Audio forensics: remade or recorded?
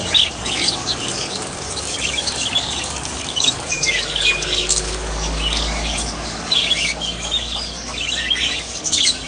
remade